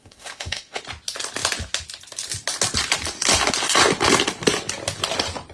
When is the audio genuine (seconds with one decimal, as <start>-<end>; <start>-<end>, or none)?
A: 0.8-5.5